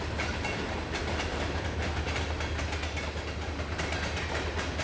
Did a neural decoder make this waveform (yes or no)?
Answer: no